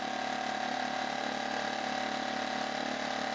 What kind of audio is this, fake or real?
real